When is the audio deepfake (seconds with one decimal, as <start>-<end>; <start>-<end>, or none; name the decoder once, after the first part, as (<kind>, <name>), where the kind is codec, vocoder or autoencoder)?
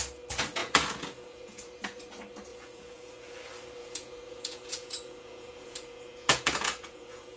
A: 0.6-1.7 (vocoder, Vocos); 2.5-3.3; 3.8-7.4